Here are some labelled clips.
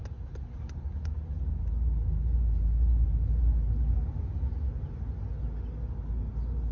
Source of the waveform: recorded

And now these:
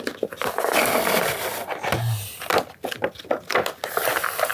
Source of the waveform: recorded